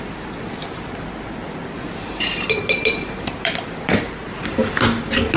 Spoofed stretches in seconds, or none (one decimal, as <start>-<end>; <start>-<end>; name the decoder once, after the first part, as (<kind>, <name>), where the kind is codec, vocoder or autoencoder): 1.4-4.6 (vocoder, BigVGAN v2)